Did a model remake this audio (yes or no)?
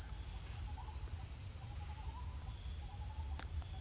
no